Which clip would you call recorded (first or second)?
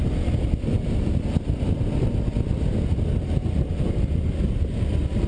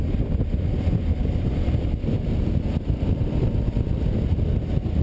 first